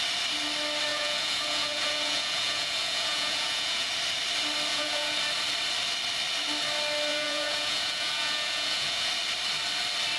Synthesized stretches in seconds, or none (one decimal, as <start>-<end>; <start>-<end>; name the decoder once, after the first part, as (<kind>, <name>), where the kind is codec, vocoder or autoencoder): 0.9-3.9 (vocoder, Vocos); 4.7-5.2; 7.1-9.1